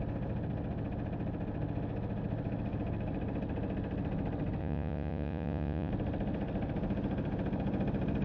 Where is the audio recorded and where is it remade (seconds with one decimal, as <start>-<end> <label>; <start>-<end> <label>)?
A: 0.0-4.6 recorded; 4.6-5.9 remade; 5.9-8.2 recorded